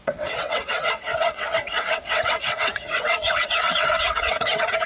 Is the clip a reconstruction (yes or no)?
yes